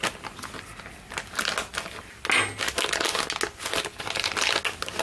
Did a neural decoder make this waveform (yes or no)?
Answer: no